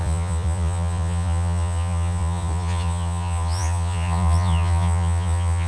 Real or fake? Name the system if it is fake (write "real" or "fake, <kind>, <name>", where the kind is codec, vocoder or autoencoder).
fake, vocoder, Vocos